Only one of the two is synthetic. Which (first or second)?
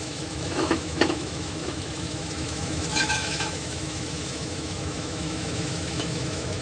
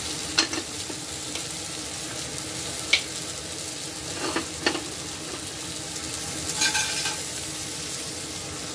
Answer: first